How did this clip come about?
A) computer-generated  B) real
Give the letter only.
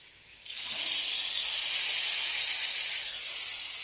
B